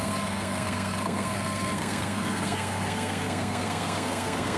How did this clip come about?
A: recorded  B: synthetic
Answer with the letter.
B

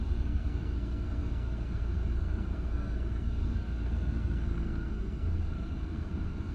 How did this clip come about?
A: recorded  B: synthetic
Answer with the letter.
B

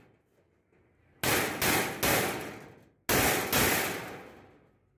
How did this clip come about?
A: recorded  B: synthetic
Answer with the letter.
A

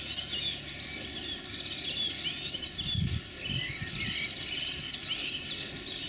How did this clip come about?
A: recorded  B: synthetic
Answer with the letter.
A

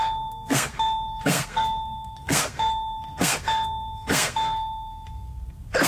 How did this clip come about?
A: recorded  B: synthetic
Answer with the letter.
B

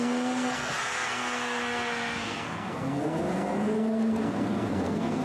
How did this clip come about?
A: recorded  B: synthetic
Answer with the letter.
B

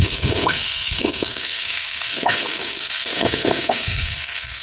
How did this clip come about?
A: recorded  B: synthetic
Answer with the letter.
B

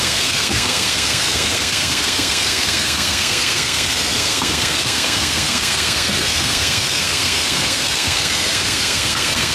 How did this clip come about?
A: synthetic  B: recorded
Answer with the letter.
A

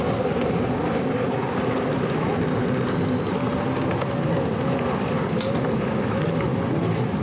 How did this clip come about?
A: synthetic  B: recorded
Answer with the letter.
B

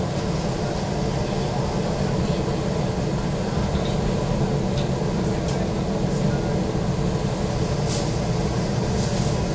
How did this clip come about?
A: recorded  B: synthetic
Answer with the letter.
A